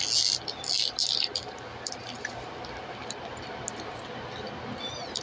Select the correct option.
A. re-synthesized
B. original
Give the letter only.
B